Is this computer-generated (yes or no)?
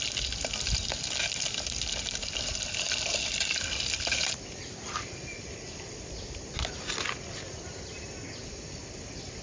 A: no